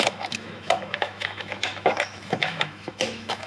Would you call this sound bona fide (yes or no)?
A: no